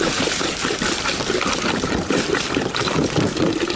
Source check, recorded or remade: recorded